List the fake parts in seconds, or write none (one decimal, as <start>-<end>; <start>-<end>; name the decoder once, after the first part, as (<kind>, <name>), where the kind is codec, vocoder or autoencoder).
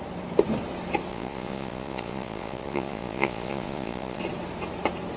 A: 1.1-4.2 (vocoder, Vocos)